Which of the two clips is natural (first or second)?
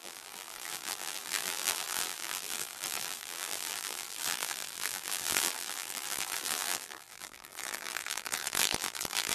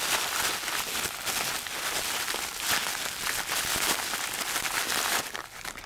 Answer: second